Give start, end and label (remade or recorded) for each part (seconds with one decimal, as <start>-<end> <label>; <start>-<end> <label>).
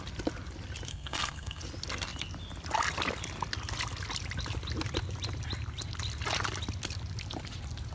0.0-0.9 recorded; 0.9-1.6 remade; 1.6-7.9 recorded